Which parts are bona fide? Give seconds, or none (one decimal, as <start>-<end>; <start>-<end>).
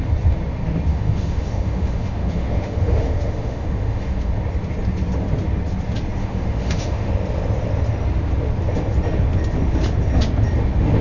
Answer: 0.0-0.9; 4.3-6.2; 7.1-11.0